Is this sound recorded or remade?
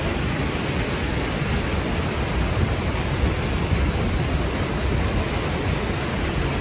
recorded